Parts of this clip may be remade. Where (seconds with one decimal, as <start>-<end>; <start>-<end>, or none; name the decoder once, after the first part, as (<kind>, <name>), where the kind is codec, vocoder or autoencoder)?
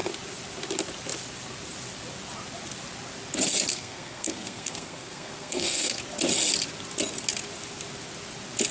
3.7-6.0 (codec, SNAC)